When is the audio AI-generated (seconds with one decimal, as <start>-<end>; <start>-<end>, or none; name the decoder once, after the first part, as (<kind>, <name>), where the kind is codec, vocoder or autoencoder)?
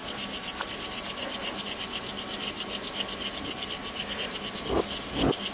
none